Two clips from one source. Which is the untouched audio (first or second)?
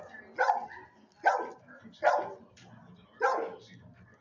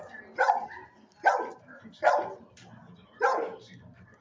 first